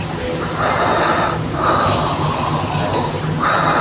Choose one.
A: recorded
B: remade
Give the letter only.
A